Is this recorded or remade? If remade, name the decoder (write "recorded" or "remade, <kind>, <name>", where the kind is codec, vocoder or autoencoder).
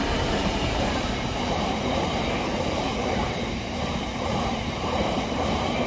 remade, vocoder, BigVGAN v2